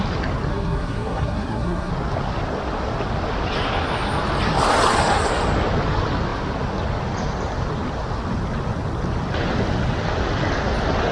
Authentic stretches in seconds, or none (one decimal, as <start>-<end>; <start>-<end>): 0.0-0.5; 1.9-11.1